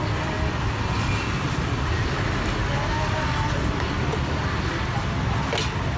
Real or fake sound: real